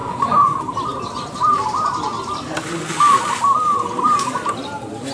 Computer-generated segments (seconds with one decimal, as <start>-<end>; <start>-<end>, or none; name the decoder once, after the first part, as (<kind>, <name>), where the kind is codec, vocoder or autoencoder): 0.0-0.6 (vocoder, Vocos)